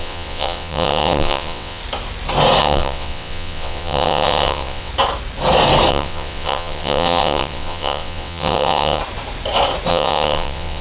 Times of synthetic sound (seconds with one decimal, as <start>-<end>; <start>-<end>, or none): 0.0-1.8; 2.6-4.9; 5.9-9.0; 9.9-10.8